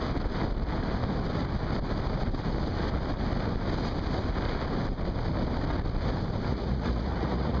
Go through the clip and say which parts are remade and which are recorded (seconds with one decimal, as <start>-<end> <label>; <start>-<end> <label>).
0.0-6.5 recorded; 6.5-7.6 remade